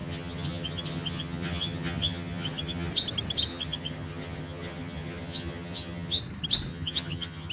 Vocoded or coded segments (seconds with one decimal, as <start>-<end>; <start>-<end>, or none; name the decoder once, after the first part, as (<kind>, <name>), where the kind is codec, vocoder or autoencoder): 0.0-2.9 (vocoder, HiFi-GAN); 3.5-6.2; 6.7-7.5